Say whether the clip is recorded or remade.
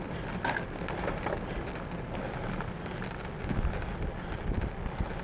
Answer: recorded